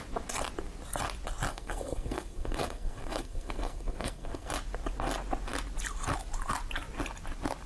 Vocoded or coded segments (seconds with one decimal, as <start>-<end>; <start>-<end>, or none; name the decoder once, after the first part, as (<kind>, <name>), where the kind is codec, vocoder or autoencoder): 1.5-4.5 (codec, SNAC)